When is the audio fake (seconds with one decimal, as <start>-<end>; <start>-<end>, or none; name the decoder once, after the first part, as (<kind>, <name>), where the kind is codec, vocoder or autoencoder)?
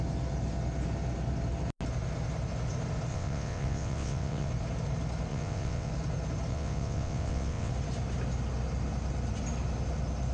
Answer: 3.1-4.5 (vocoder, WaveNeXt); 5.3-5.9; 6.5-7.7